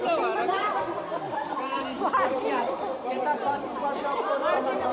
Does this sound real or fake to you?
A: fake